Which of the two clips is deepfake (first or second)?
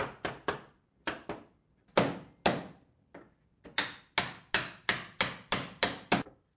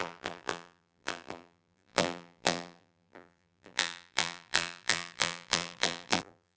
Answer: second